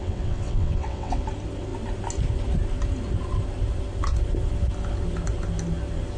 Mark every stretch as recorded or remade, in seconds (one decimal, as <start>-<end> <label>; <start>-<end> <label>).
0.0-1.2 remade; 1.2-6.2 recorded